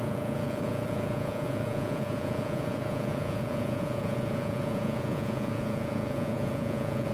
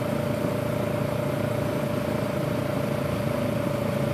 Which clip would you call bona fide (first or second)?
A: second